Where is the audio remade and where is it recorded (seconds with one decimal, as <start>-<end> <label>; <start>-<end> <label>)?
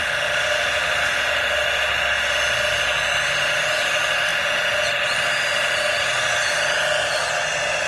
0.0-7.9 recorded